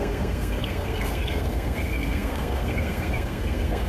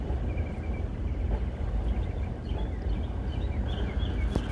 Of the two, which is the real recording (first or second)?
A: second